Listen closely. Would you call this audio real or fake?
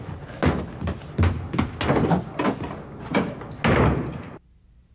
real